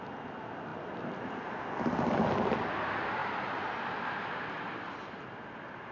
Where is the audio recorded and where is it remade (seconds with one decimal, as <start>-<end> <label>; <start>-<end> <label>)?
0.0-5.9 recorded